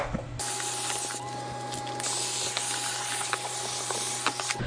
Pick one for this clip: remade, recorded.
recorded